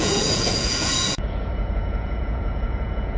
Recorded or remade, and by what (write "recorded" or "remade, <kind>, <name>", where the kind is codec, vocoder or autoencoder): remade, vocoder, Vocos